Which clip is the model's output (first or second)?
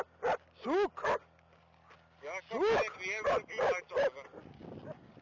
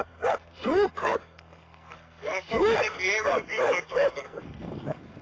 second